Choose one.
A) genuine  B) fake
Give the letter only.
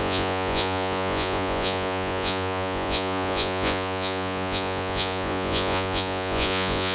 B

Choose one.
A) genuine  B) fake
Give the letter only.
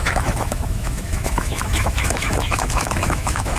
B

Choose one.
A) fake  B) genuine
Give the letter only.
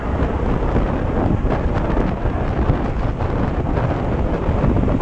B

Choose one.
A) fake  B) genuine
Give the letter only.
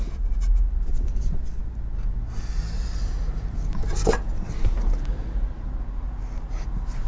B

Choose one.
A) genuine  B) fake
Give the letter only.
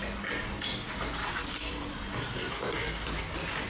A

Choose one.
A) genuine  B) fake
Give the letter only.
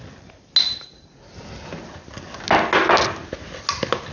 A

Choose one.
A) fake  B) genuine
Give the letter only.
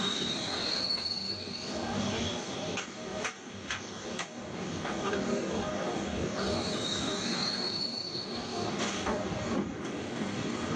A